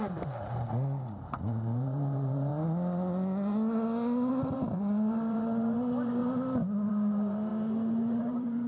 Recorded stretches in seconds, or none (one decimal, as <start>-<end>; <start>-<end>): 2.5-4.3; 6.2-6.9; 7.5-8.2